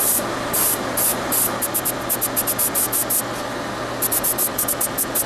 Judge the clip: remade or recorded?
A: recorded